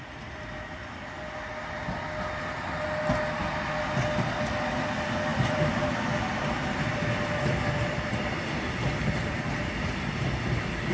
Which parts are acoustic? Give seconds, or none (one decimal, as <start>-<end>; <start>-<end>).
0.0-5.3; 9.9-10.9